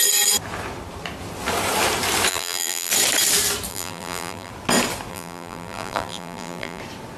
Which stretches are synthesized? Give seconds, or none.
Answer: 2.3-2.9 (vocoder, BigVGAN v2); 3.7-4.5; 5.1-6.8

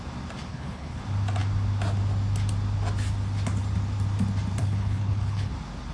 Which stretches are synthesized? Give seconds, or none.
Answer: 0.5-1.0 (codec, HILCodec); 4.6-5.5

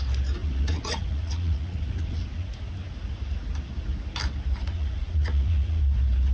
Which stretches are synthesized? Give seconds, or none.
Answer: 0.4-2.7 (vocoder, Vocos); 4.6-5.8

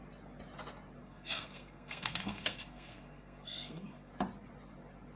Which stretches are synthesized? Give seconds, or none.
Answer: 1.0-4.1 (codec, SNAC)